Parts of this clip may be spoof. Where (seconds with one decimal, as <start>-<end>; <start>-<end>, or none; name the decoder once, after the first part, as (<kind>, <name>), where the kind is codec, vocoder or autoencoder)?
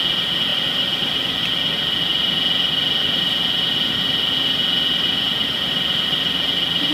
none